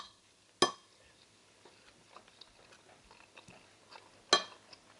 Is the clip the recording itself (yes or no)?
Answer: yes